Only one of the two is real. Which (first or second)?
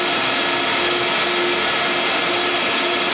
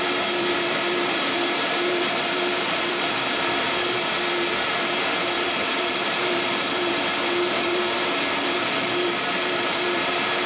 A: first